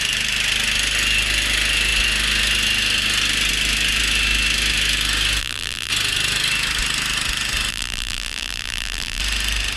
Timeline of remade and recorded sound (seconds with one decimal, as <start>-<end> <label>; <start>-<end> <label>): 0.0-5.4 recorded; 5.4-5.9 remade; 5.9-7.7 recorded; 7.7-9.2 remade; 9.2-9.8 recorded